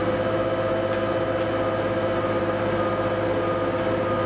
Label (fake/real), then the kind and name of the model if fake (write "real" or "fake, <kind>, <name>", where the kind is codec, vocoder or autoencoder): real